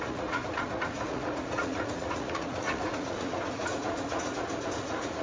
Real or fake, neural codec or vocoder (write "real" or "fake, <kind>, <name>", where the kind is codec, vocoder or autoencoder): fake, vocoder, Vocos